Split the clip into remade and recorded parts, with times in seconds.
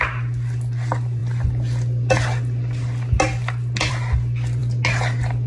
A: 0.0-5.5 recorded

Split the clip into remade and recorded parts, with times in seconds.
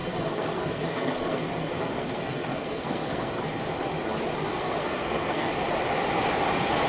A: 0.0-3.4 remade; 3.4-4.5 recorded; 4.5-5.5 remade; 5.5-6.9 recorded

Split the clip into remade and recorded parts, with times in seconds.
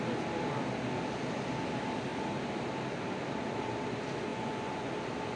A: 0.0-4.3 recorded; 4.3-4.9 remade; 4.9-5.4 recorded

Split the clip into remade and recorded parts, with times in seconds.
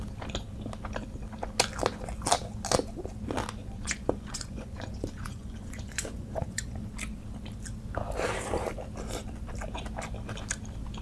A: 0.0-3.6 recorded; 3.6-6.9 remade; 6.9-11.0 recorded